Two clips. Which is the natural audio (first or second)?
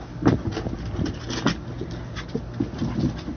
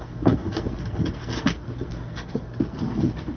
first